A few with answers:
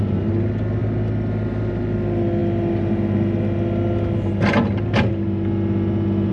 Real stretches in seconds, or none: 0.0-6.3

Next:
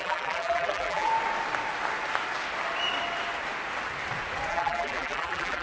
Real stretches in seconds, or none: 1.1-4.5

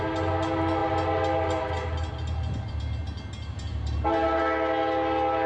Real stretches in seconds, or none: 0.0-3.7; 4.4-5.5

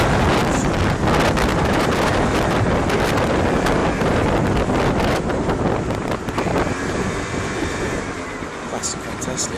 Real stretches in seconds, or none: 0.0-0.4; 0.9-1.5; 3.3-3.8; 7.8-9.6

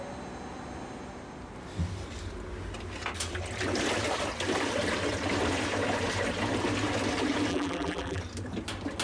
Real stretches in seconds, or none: 0.0-7.5; 8.2-9.0

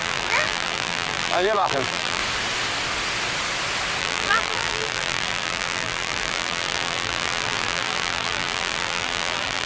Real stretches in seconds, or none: 2.2-4.0